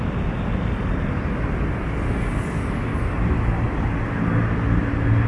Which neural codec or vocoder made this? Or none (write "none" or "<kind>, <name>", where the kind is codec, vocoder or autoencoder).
none